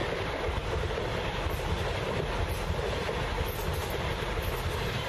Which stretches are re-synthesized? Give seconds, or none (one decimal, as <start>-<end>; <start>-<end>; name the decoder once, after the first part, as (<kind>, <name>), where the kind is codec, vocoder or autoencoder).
0.0-1.5 (vocoder, BigVGAN v2); 3.8-4.3